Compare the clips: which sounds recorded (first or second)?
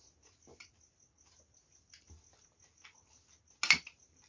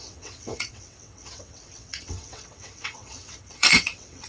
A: first